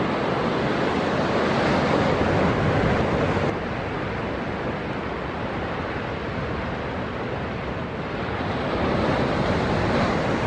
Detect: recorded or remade recorded